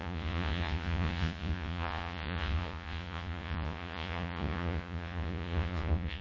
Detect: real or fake fake